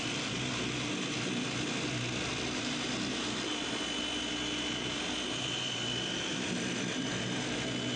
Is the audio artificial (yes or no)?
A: no